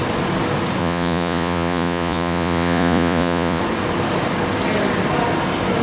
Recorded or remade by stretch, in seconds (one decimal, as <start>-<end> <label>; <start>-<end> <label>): 0.0-0.8 recorded; 0.8-3.6 remade; 3.6-5.8 recorded